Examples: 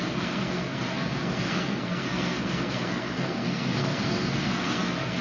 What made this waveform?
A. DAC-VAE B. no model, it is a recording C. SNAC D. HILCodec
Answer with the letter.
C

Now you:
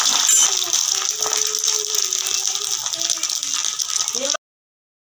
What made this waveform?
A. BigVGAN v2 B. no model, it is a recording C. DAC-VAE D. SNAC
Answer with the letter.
B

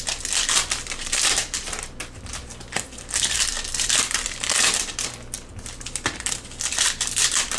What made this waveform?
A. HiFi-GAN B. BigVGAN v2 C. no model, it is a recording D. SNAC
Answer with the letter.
B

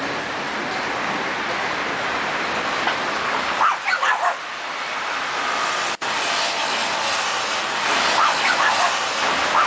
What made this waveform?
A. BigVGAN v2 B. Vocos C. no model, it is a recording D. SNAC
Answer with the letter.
C